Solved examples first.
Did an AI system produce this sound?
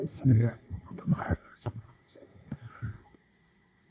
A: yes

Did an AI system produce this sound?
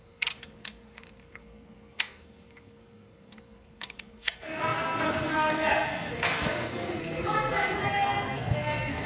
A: yes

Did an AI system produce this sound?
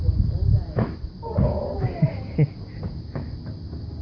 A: no